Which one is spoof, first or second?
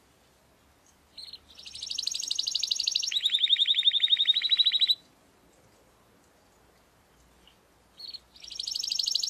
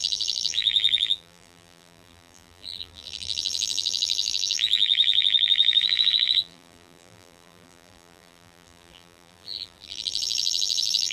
second